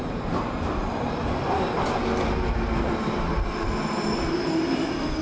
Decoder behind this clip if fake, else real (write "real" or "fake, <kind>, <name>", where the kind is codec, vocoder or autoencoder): real